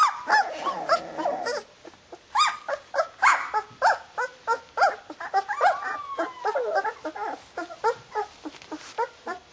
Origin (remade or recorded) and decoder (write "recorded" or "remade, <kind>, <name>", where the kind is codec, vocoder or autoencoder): recorded